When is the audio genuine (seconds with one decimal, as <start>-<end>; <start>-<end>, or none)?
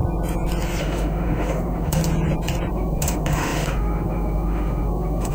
0.0-0.8; 2.0-2.7